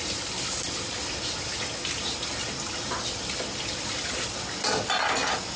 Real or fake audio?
real